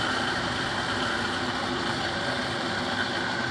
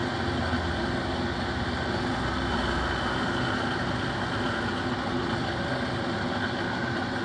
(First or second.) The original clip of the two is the second